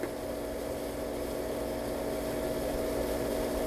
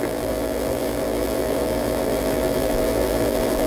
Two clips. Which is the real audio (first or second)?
first